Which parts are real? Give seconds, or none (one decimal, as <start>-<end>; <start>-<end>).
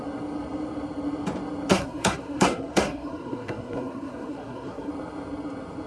0.0-1.7; 4.9-5.9